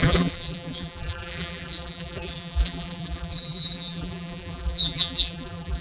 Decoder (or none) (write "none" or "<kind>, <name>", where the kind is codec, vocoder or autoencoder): vocoder, BigVGAN v2